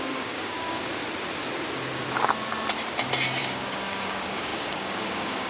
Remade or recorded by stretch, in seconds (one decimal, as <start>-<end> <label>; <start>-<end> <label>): 0.0-1.0 remade; 1.0-3.4 recorded; 3.4-5.5 remade